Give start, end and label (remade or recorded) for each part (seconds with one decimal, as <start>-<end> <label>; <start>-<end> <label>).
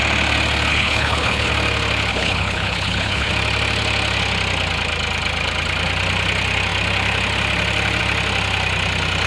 0.0-0.7 recorded; 0.7-1.5 remade; 1.5-2.1 recorded; 2.1-3.3 remade; 3.3-9.3 recorded